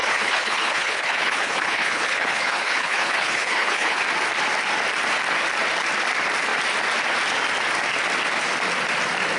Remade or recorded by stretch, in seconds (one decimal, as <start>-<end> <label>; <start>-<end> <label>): 0.0-4.0 remade; 4.0-9.4 recorded